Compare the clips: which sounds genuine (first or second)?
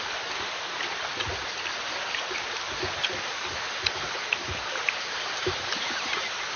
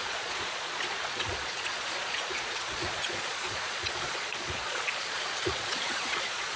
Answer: first